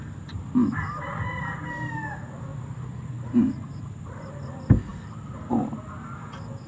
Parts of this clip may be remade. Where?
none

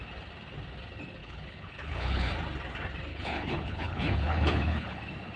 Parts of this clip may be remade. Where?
1.2-2.3 (codec, HILCodec); 3.1-5.0

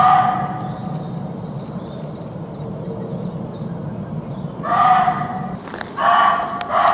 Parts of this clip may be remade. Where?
none

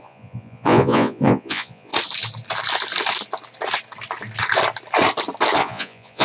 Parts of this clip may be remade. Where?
0.0-1.9 (vocoder, Vocos); 5.6-6.2

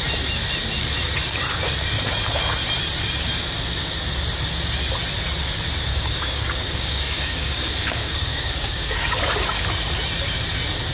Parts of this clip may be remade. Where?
5.9-9.2 (codec, DAC)

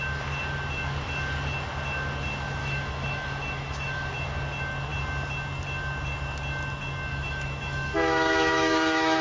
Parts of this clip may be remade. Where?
2.6-4.1 (autoencoder, DAC-VAE); 7.1-9.2

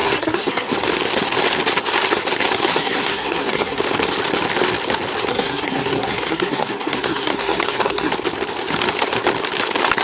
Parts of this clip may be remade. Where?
0.0-0.7 (codec, SNAC); 2.7-3.8; 5.3-8.1